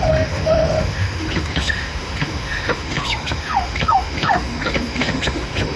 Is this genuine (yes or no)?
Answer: no